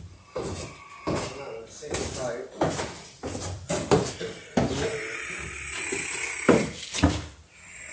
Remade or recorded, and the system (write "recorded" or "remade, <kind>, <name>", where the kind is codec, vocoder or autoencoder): recorded